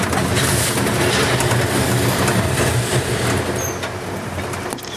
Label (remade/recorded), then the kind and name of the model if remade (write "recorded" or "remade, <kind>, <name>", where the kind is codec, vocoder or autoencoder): recorded